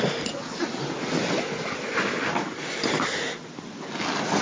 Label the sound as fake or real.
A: real